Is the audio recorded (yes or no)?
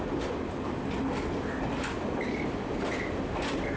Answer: yes